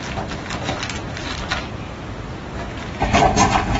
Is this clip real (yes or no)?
yes